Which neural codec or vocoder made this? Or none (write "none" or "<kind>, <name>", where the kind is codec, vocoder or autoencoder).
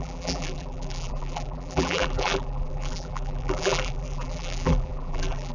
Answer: vocoder, BigVGAN v2